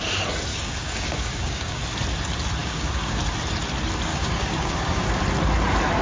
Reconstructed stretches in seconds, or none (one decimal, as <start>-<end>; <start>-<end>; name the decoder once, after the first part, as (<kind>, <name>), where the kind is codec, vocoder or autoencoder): 0.5-1.8 (codec, DAC); 2.6-3.2; 4.1-5.2